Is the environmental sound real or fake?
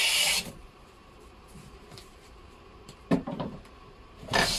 fake